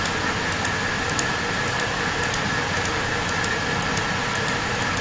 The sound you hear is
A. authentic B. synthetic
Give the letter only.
A